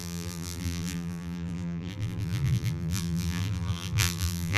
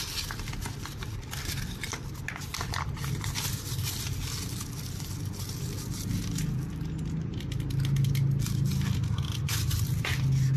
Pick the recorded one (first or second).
second